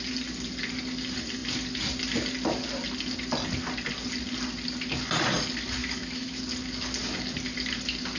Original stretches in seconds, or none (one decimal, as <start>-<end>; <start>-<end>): 0.0-5.8; 6.4-8.2